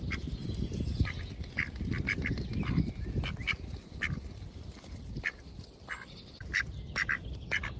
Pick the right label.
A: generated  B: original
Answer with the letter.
B